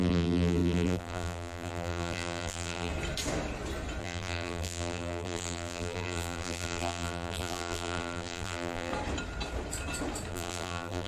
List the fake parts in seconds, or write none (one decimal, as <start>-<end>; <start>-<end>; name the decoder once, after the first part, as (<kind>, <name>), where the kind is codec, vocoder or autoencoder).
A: 0.0-2.9 (vocoder, BigVGAN v2); 4.0-8.9; 10.3-11.1